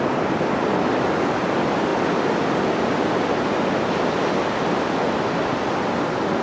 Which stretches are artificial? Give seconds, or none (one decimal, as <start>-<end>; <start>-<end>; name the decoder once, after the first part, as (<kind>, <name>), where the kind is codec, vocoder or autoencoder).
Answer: none